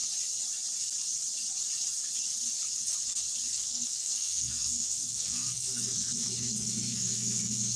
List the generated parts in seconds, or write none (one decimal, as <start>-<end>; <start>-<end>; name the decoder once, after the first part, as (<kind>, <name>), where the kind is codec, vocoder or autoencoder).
3.5-7.8 (codec, SNAC)